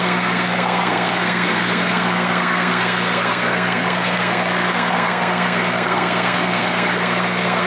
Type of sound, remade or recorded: remade